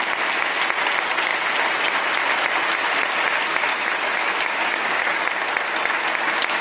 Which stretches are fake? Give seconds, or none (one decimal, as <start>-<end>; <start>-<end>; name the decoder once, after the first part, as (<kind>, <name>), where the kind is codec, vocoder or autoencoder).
3.7-5.2 (autoencoder, DAC-VAE)